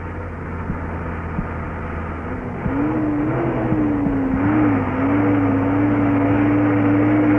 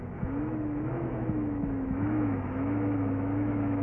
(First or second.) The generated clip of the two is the second